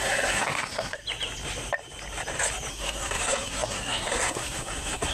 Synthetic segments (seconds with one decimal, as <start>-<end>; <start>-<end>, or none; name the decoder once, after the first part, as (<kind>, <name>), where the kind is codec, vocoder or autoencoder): 0.0-1.0 (codec, SNAC); 2.7-5.1